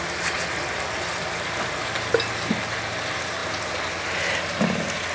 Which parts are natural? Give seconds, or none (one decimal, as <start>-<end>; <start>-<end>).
0.0-5.1